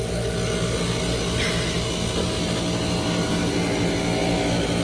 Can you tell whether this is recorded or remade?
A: recorded